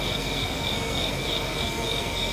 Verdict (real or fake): fake